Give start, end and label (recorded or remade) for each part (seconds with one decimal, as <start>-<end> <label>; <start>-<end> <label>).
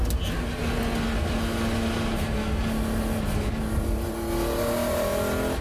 0.0-5.6 recorded